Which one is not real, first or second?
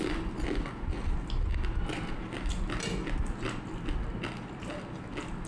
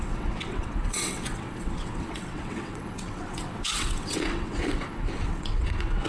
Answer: second